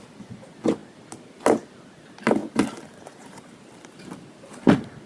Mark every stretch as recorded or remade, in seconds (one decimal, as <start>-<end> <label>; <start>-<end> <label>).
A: 0.0-2.4 recorded; 2.4-3.6 remade; 3.6-5.1 recorded